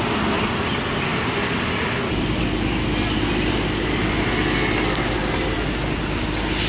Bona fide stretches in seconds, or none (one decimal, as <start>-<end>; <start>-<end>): 0.0-6.7